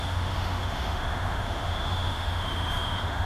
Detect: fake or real fake